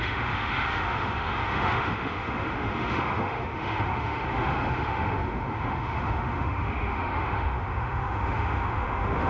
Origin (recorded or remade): remade